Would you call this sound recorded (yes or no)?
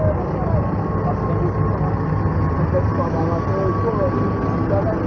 yes